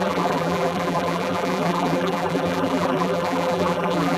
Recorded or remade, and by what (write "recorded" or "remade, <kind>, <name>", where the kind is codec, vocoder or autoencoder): remade, vocoder, BigVGAN v2